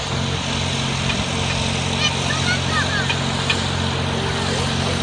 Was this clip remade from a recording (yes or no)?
no